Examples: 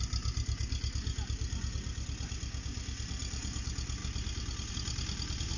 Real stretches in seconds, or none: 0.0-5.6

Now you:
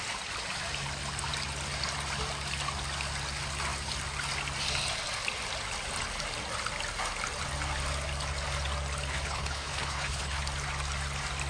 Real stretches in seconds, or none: 0.0-9.1; 10.4-11.5

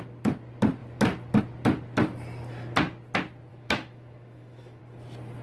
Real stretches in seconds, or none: 0.0-3.5; 4.8-5.4

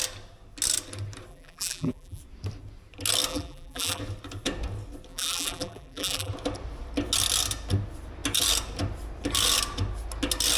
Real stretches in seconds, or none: 0.0-1.3; 2.2-3.3; 4.0-5.1; 6.3-10.6

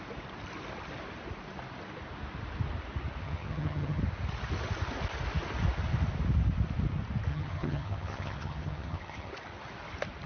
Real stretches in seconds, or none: 0.0-3.2; 4.0-7.3; 9.3-10.3

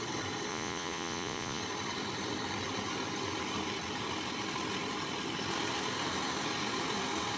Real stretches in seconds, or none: 0.0-0.5; 1.6-7.4

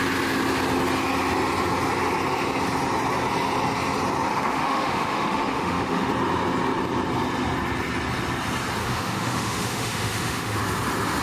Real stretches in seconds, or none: 0.0-4.3; 6.1-8.8; 10.6-11.2